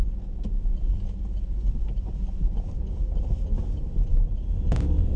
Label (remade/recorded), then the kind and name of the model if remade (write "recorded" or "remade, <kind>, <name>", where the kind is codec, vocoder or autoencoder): recorded